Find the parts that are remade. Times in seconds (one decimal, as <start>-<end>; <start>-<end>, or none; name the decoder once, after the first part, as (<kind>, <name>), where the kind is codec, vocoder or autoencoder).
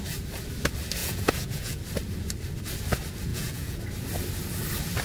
1.0-1.8 (vocoder, Vocos); 3.3-3.8